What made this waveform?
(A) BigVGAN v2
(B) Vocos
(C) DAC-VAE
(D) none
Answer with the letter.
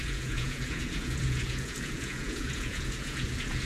B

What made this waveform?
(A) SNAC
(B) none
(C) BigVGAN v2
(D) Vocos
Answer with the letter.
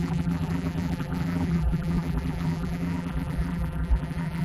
C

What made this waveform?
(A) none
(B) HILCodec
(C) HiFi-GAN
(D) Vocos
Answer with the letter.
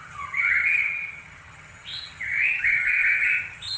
C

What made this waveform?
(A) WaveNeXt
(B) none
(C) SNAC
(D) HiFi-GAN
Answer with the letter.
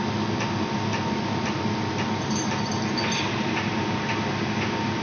B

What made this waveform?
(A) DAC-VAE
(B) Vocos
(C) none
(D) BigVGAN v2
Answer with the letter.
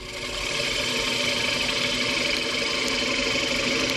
C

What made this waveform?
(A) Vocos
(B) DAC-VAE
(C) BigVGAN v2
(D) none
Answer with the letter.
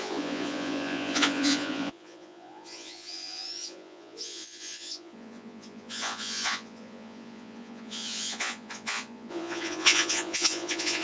A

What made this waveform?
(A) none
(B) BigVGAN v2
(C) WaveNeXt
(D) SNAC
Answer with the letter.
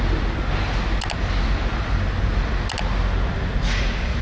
A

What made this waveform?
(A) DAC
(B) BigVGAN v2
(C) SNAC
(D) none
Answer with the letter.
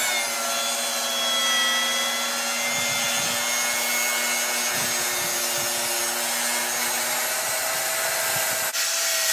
D